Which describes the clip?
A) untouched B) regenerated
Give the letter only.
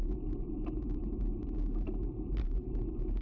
B